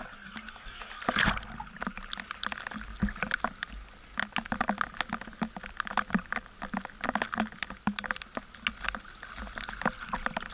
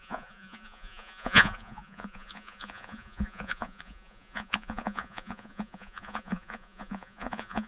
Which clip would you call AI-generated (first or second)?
second